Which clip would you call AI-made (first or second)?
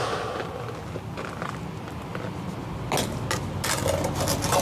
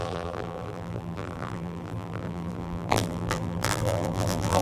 second